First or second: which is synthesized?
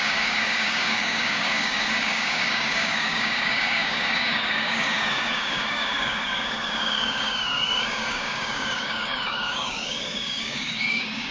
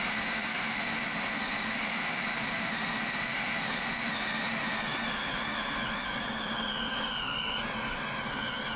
first